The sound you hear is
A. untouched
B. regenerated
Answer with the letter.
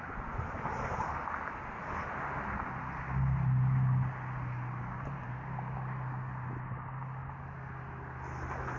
A